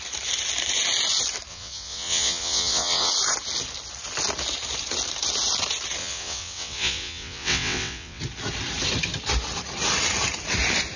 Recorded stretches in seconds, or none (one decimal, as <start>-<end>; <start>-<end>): 0.0-1.5; 3.1-6.0; 8.2-11.0